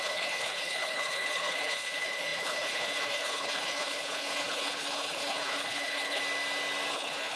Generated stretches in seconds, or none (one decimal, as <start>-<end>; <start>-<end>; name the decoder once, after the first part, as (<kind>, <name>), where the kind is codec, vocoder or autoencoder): 0.0-6.2 (codec, HILCodec); 6.9-7.4